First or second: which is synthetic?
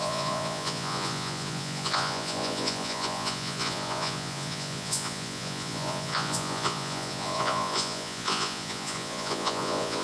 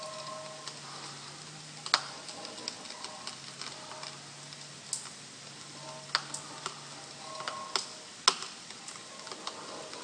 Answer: first